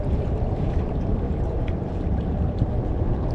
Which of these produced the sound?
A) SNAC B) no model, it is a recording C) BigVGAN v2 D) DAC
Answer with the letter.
C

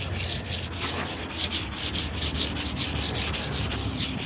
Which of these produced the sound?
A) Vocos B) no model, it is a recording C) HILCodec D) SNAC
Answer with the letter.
B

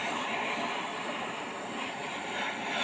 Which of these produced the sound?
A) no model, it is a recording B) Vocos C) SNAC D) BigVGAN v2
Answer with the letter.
A